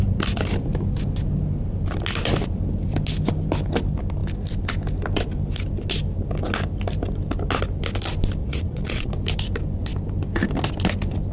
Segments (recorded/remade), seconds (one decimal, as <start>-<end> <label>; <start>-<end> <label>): 0.0-8.4 recorded; 8.4-9.1 remade; 9.1-11.3 recorded